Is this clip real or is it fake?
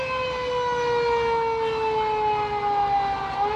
real